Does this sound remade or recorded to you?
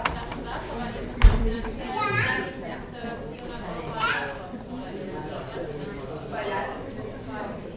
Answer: remade